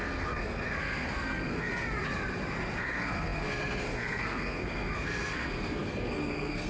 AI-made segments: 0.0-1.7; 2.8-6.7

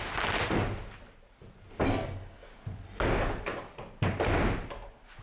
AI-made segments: 1.9-2.5

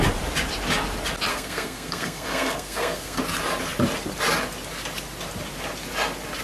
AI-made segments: 1.3-3.2

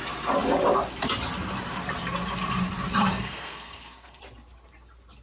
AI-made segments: 3.1-4.2

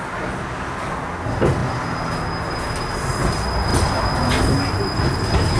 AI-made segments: none